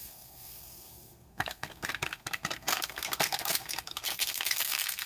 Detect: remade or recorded remade